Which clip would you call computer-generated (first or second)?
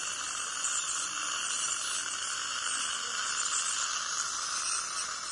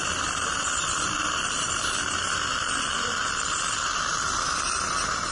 second